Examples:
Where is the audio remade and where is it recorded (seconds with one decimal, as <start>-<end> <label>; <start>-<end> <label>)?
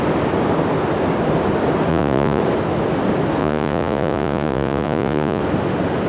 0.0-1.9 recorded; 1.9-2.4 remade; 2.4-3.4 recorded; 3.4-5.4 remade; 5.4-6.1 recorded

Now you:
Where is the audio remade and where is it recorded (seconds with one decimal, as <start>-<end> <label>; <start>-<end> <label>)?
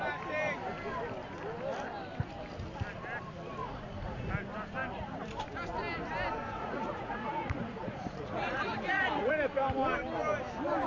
0.0-3.6 recorded; 3.6-4.3 remade; 4.3-6.5 recorded; 6.5-9.3 remade; 9.3-10.9 recorded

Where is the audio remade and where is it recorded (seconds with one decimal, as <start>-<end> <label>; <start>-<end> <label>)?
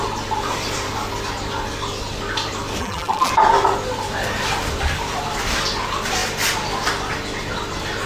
0.0-2.8 recorded; 2.8-3.3 remade; 3.3-8.1 recorded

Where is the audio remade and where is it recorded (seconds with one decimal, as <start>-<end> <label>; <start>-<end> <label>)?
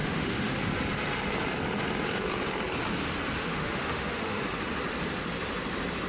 0.0-0.6 remade; 0.6-3.4 recorded; 3.4-4.4 remade; 4.4-6.1 recorded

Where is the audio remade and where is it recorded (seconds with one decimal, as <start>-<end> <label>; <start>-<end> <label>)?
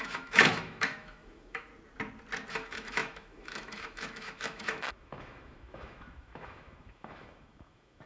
0.0-1.7 remade; 1.7-2.5 recorded; 2.5-8.1 remade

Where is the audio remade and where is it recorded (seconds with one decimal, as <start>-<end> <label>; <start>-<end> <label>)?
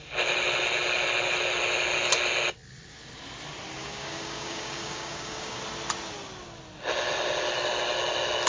0.0-3.8 recorded; 3.8-5.6 remade; 5.6-8.5 recorded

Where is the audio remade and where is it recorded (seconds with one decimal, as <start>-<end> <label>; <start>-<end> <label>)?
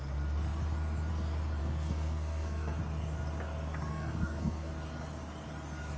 0.0-1.6 recorded; 1.6-2.8 remade; 2.8-3.9 recorded; 3.9-4.7 remade; 4.7-6.0 recorded